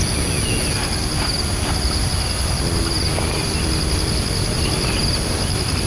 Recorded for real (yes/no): yes